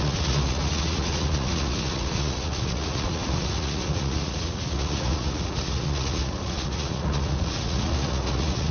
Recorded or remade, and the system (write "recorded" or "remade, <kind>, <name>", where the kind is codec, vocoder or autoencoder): remade, vocoder, Vocos